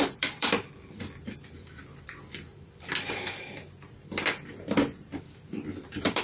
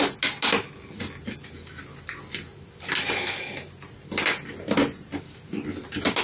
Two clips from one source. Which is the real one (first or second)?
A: second